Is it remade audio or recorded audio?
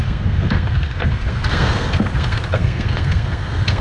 remade